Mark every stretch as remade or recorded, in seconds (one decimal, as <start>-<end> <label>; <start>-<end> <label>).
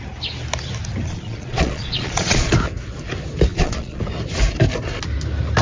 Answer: 0.0-1.1 recorded; 1.1-2.5 remade; 2.5-3.5 recorded; 3.5-4.0 remade; 4.0-5.6 recorded